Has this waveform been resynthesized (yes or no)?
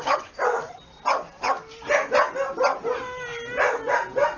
no